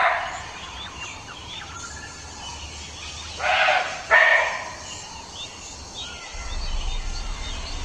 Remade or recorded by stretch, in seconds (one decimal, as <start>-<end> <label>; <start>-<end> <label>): 0.0-1.7 remade; 1.7-7.8 recorded